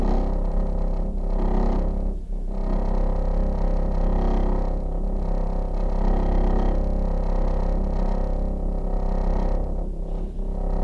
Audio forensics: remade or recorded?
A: recorded